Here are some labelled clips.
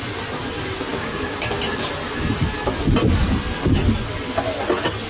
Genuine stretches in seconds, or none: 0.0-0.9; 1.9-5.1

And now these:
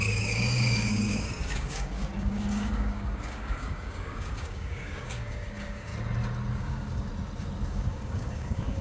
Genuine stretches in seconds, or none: 5.9-6.6; 7.1-7.7

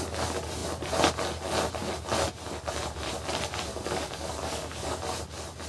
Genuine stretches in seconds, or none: 0.0-3.7; 5.0-5.7

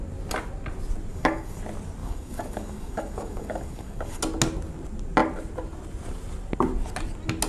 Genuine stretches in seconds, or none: 0.0-1.1; 1.6-2.0; 4.2-7.5

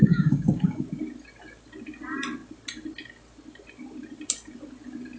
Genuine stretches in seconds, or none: 0.8-5.2

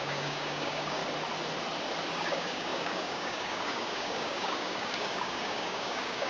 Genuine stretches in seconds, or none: 1.0-2.1